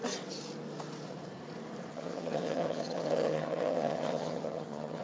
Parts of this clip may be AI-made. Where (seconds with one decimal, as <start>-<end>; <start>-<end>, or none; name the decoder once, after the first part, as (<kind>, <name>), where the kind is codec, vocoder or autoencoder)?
1.9-5.0 (vocoder, HiFi-GAN)